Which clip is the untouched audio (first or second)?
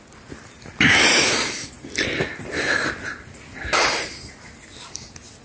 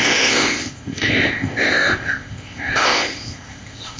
first